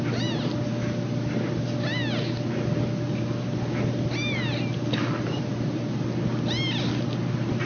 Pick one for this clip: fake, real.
real